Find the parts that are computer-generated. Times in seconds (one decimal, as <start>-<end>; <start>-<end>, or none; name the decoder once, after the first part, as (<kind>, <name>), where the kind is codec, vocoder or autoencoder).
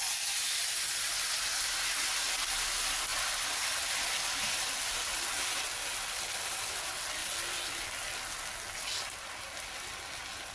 3.1-5.3 (vocoder, BigVGAN v2)